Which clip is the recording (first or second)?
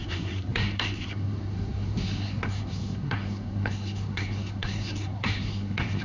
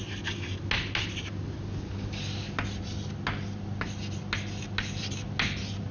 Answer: second